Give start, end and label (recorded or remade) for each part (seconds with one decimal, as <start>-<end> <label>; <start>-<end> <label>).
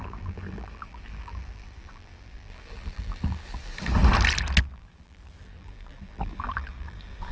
0.0-3.7 remade; 3.7-4.6 recorded; 4.6-7.3 remade